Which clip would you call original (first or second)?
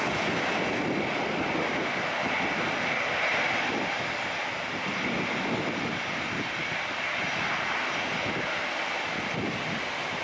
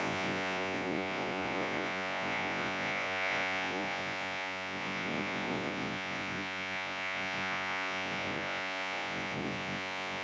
first